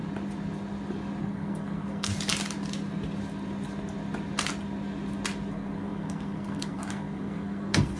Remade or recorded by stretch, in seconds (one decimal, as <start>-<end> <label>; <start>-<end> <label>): 0.0-1.2 recorded; 1.2-2.1 remade; 2.1-5.5 recorded; 5.5-8.0 remade